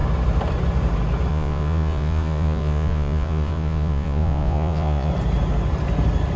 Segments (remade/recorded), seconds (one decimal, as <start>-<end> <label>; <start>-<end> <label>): 0.0-1.3 recorded; 1.3-5.1 remade; 5.1-6.4 recorded